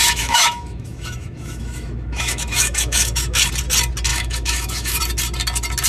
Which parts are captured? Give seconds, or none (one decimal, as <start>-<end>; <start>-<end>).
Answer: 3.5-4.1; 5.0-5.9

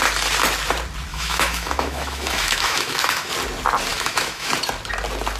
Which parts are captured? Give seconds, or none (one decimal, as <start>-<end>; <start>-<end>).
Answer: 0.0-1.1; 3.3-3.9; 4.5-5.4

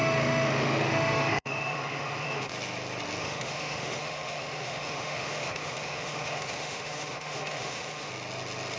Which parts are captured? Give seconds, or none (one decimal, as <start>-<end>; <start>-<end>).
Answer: 2.5-3.2; 8.1-8.8

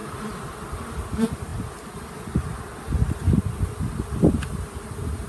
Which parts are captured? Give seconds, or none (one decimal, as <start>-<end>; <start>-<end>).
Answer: 0.0-5.3

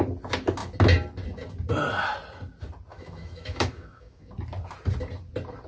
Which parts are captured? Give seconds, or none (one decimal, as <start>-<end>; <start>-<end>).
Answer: 0.0-2.9; 4.3-5.7

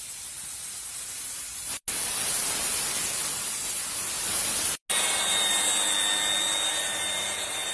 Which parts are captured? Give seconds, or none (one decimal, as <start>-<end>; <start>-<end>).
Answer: 0.0-7.7

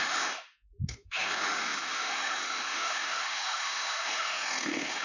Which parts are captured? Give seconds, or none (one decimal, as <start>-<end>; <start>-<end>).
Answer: none

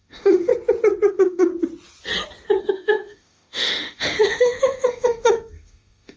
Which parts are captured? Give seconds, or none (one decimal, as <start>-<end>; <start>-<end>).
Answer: 0.5-1.1; 1.5-2.6